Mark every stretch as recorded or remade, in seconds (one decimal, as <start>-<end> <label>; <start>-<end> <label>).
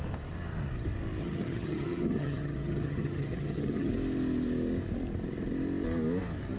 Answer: 0.0-1.2 recorded; 1.2-3.9 remade; 3.9-6.6 recorded